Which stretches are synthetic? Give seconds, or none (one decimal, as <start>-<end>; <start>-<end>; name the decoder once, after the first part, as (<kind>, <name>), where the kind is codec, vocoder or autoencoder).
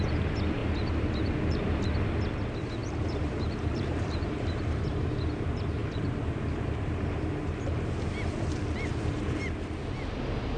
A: 0.6-1.8 (vocoder, BigVGAN v2); 2.8-5.1; 5.8-8.0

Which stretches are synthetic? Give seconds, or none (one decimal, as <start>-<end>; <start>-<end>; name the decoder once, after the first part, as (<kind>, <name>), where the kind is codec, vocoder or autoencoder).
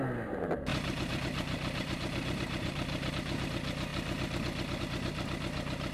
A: 0.7-3.1 (vocoder, BigVGAN v2)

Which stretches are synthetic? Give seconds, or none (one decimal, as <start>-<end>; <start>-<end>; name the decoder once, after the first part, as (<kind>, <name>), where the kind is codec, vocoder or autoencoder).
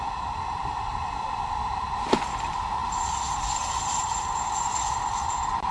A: none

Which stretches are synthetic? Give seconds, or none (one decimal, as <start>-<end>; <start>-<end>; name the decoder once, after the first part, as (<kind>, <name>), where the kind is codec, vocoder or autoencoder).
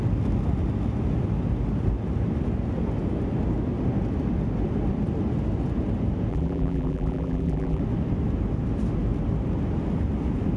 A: 6.3-7.8 (vocoder, BigVGAN v2)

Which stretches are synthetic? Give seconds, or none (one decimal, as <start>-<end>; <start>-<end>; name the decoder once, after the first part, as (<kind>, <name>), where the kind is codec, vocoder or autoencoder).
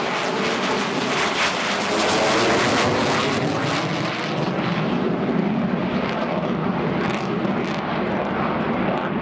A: 4.7-5.3 (vocoder, BigVGAN v2); 5.8-8.1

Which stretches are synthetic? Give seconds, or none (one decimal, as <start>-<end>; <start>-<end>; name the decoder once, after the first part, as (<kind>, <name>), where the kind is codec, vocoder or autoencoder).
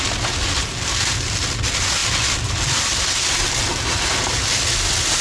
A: none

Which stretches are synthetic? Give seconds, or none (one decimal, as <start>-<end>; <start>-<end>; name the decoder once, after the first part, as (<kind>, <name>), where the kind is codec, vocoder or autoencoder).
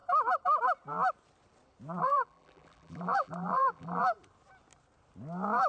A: 2.0-4.0 (vocoder, BigVGAN v2)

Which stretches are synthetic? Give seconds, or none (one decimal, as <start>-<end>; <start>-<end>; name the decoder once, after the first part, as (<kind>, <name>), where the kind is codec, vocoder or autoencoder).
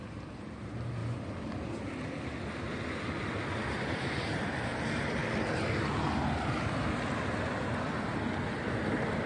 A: 0.0-1.0 (vocoder, BigVGAN v2); 3.8-5.2; 8.4-9.3